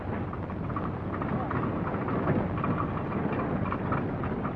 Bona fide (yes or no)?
yes